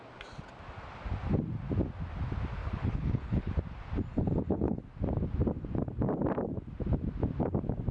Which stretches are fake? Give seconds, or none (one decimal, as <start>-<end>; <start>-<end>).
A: 2.6-3.5; 4.1-4.8